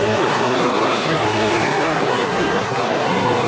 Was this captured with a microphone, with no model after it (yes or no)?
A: no